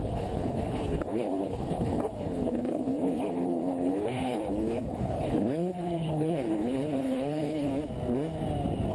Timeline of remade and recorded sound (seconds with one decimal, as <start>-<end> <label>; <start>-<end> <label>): 0.0-7.7 remade; 7.7-8.9 recorded